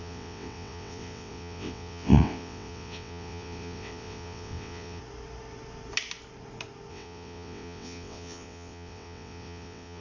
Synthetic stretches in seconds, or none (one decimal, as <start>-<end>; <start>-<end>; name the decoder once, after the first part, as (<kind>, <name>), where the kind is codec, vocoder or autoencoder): 0.0-5.0 (vocoder, WaveNeXt); 6.9-10.0